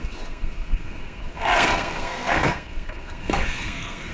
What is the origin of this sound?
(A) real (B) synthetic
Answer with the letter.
B